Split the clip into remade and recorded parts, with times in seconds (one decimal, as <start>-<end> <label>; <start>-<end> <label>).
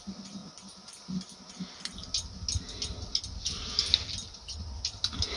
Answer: 0.0-5.4 recorded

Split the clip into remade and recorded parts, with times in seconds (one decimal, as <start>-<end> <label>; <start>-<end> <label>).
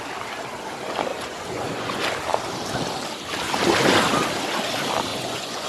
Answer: 0.0-1.1 recorded; 1.1-2.0 remade; 2.0-5.1 recorded; 5.1-5.7 remade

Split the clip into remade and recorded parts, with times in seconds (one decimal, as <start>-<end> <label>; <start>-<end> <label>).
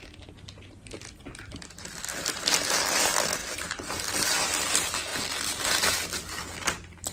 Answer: 0.0-7.1 recorded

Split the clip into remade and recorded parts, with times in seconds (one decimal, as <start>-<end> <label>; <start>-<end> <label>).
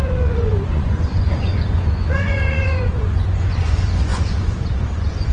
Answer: 0.0-5.3 remade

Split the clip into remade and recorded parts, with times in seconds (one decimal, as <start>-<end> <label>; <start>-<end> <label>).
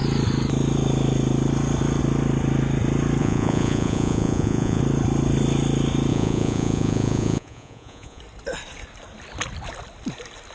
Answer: 0.0-3.2 recorded; 3.2-4.8 remade; 4.8-6.1 recorded; 6.1-8.2 remade; 8.2-10.5 recorded